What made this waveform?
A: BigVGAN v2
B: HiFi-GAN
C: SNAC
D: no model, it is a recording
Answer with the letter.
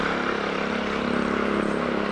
D